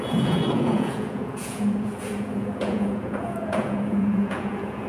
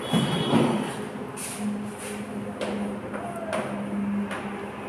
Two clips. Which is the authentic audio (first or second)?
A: second